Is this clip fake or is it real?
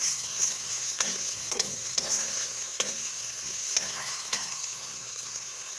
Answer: fake